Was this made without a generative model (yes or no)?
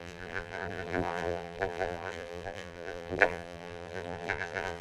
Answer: no